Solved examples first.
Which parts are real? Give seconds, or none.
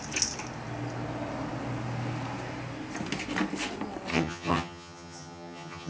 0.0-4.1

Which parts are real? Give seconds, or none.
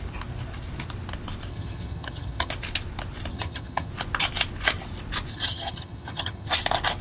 0.0-1.5; 2.5-3.3; 3.9-5.3; 6.5-7.0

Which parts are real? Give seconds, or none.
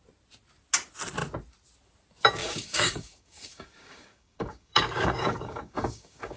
0.0-2.4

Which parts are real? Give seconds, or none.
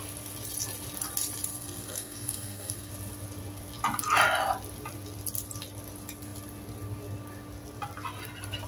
0.0-1.5; 2.9-8.7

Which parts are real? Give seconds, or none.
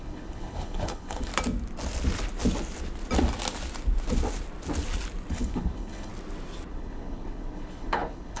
1.3-5.3; 6.1-6.7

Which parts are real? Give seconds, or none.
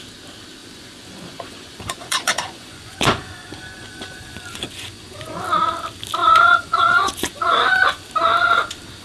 0.0-0.6; 5.4-6.2; 8.0-9.0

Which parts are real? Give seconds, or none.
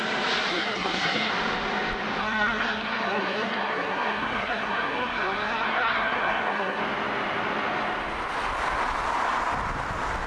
0.0-0.5; 1.3-2.2; 6.8-10.3